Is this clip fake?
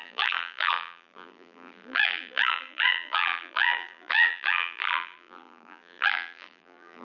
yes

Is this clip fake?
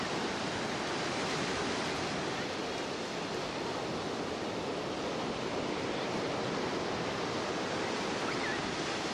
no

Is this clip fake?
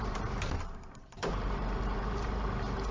yes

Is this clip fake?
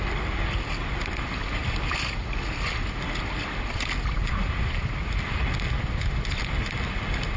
no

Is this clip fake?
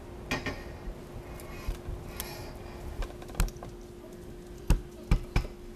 no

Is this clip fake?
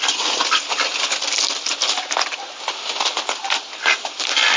no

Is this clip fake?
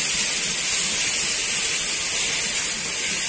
no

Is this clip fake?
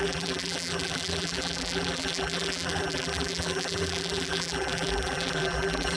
yes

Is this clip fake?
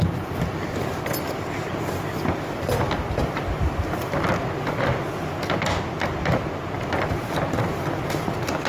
no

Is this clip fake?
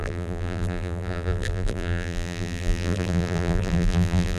yes